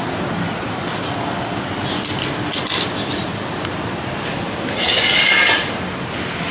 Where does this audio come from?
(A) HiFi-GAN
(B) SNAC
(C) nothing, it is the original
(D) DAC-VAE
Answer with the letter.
C